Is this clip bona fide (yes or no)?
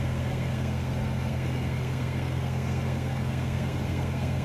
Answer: no